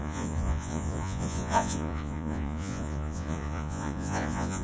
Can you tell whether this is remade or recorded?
remade